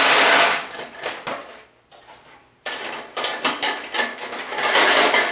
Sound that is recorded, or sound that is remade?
recorded